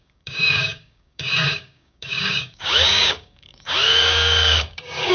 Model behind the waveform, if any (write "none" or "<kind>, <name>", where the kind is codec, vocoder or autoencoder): codec, DAC